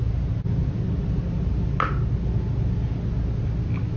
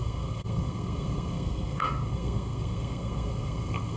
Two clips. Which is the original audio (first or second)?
first